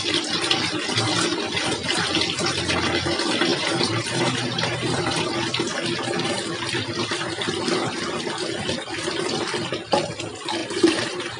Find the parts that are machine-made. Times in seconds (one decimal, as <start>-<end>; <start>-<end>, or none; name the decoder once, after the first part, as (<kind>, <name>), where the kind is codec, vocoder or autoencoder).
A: 3.5-5.3 (vocoder, BigVGAN v2); 10.6-11.4